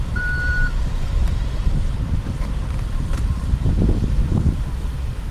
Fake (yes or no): yes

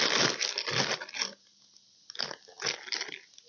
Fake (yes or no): no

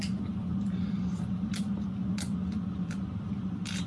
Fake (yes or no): no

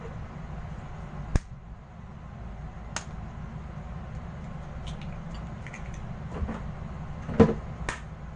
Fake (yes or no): no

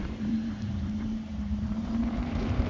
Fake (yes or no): yes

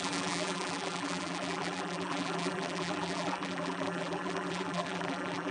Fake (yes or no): yes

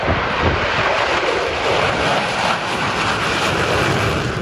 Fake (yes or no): yes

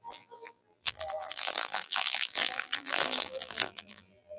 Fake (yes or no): yes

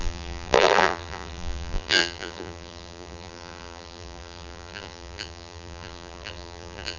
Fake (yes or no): yes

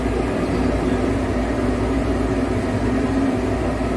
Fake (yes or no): no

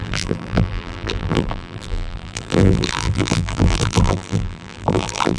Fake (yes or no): yes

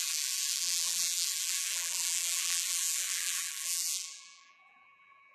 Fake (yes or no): yes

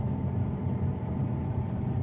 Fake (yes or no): yes